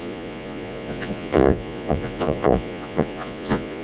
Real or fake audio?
fake